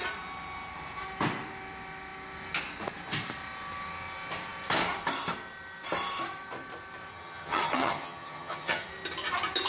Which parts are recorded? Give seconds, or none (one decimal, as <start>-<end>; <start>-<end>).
0.0-7.1; 8.9-9.7